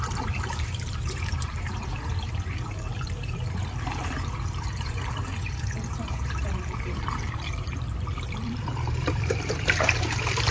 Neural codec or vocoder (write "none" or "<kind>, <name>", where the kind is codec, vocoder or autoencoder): vocoder, BigVGAN v2